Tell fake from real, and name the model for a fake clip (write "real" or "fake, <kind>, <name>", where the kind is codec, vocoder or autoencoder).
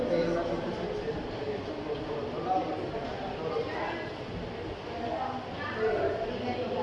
real